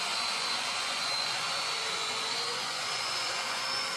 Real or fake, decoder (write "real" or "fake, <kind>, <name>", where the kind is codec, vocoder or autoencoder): fake, vocoder, Vocos